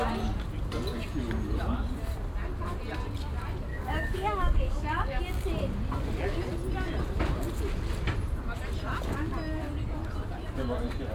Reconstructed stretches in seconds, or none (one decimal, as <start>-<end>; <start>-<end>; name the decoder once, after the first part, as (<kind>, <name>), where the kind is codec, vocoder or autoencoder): 3.7-5.2 (codec, DAC)

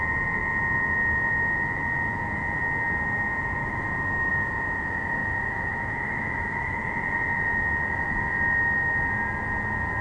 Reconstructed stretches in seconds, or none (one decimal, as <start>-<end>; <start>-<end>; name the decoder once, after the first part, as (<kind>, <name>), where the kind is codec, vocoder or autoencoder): 3.6-4.3 (autoencoder, DAC-VAE); 5.2-6.8